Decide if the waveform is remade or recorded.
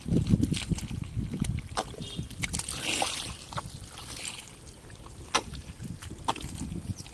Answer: recorded